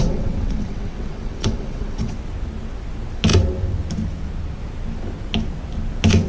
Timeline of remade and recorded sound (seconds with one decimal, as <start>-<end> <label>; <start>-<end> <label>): 0.0-2.1 remade; 2.1-6.3 recorded